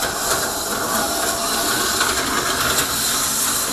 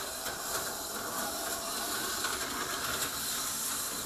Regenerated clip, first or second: second